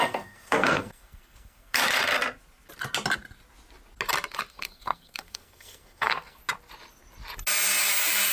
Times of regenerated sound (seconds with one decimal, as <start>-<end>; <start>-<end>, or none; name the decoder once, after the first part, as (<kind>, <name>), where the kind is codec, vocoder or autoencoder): 0.0-1.8 (codec, SNAC); 4.5-6.4